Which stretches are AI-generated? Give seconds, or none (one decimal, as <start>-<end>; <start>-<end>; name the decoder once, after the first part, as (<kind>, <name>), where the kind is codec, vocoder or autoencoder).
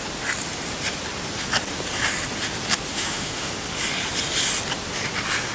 2.9-3.5 (autoencoder, DAC-VAE)